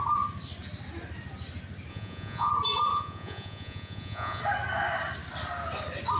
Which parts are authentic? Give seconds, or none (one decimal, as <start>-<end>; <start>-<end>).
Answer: 0.0-1.9; 2.5-2.9; 4.4-6.2

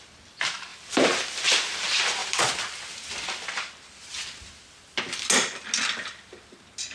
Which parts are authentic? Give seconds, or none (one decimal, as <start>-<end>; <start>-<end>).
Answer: 0.0-0.7; 1.8-6.9